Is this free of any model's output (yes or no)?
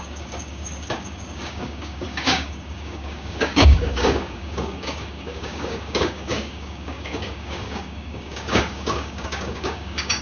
no